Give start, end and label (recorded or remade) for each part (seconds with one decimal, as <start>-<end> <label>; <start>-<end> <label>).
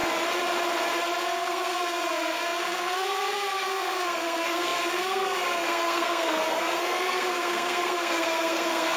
0.0-1.2 recorded; 1.2-9.0 remade